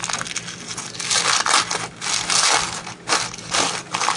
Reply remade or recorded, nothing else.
recorded